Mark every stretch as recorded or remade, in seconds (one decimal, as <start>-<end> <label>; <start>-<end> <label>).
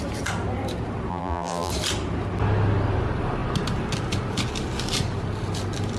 0.0-1.1 recorded; 1.1-1.7 remade; 1.7-6.0 recorded